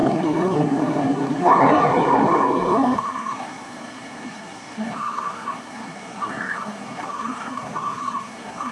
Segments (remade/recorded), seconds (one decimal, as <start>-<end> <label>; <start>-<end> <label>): 0.0-8.7 remade